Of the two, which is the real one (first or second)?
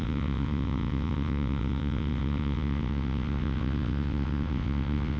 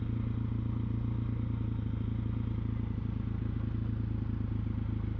second